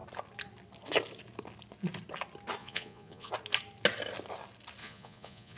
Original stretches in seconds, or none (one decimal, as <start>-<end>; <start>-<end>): 0.0-2.6; 3.3-4.8